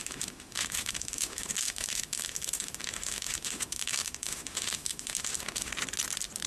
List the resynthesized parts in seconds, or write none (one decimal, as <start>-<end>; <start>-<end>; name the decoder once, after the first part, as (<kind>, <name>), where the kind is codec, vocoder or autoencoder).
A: 0.0-5.7 (autoencoder, DAC-VAE)